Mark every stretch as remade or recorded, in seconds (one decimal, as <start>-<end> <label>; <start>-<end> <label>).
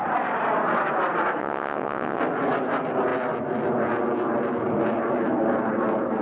0.0-1.4 recorded; 1.4-2.2 remade; 2.2-6.2 recorded